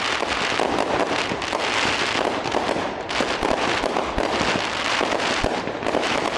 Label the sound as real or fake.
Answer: real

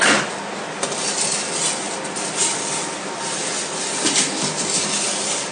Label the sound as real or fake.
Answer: real